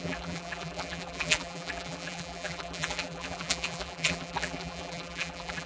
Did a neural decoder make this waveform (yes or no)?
yes